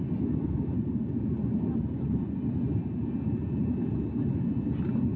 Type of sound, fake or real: real